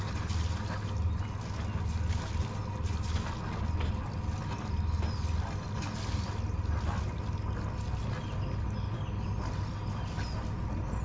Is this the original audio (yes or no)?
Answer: yes